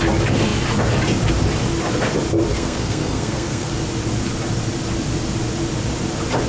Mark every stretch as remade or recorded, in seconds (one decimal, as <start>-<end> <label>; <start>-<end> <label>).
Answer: 0.0-2.5 recorded; 2.5-3.7 remade; 3.7-6.5 recorded